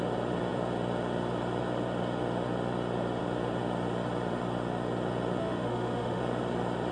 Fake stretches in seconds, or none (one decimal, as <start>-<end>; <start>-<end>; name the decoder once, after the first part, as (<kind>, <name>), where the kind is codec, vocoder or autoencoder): 5.4-6.2 (autoencoder, DAC-VAE)